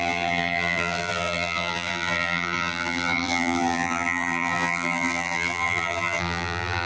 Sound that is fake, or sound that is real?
fake